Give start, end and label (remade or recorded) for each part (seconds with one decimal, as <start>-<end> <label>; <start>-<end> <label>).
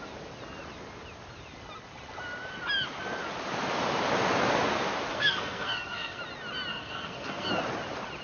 0.0-5.1 recorded; 5.1-6.2 remade; 6.2-6.7 recorded; 6.7-7.5 remade; 7.5-8.2 recorded